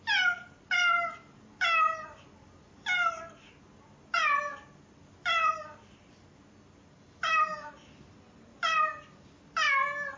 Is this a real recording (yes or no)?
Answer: yes